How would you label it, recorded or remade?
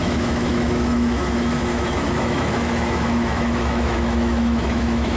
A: remade